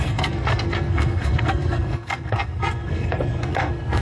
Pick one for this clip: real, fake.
fake